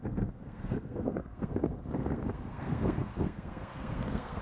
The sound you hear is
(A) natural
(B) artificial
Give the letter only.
B